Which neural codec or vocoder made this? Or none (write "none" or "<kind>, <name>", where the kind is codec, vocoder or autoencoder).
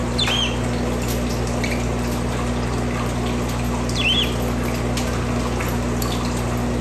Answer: none